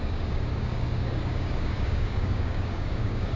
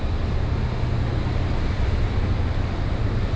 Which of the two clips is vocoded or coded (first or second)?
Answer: first